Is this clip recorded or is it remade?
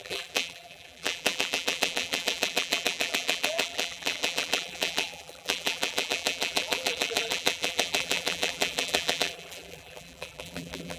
remade